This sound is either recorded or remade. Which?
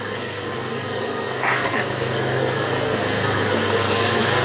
remade